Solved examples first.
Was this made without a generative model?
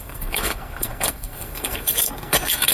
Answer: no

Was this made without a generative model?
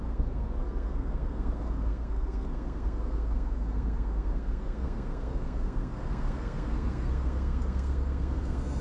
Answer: no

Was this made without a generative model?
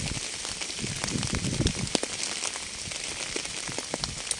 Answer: yes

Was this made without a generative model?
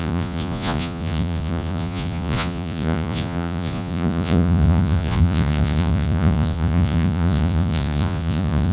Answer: no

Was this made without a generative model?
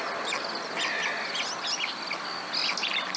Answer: yes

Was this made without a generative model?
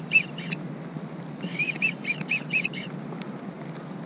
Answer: yes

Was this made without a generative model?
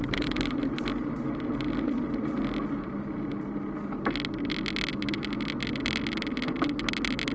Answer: yes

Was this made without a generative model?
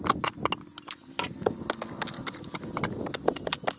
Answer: yes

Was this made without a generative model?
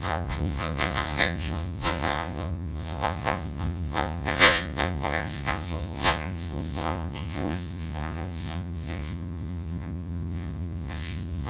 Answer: no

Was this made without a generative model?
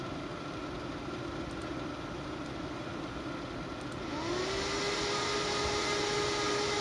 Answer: yes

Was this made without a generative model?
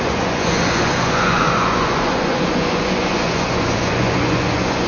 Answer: no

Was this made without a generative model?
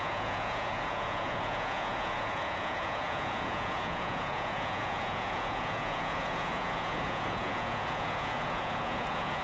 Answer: no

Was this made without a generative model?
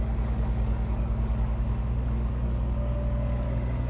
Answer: no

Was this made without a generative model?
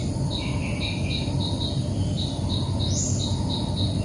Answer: yes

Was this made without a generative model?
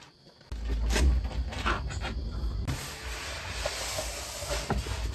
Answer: yes